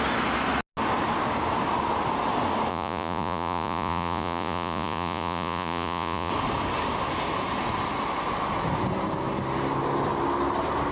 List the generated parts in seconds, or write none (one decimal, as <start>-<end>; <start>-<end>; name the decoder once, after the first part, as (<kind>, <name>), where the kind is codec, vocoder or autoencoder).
2.7-6.3 (vocoder, Vocos)